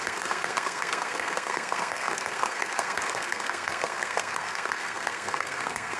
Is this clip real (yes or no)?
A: no